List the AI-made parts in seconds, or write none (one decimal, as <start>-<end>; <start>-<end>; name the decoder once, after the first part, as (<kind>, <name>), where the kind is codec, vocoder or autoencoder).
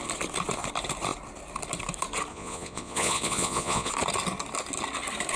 2.3-3.9 (vocoder, Vocos)